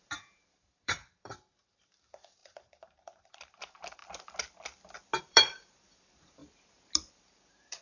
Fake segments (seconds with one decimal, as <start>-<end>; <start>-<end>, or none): 0.0-4.0; 5.2-6.4; 7.1-7.8